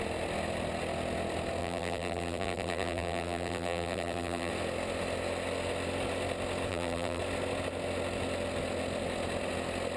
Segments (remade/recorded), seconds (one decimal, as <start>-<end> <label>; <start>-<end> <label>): 0.0-1.6 recorded; 1.6-4.5 remade; 4.5-6.7 recorded; 6.7-7.2 remade; 7.2-10.0 recorded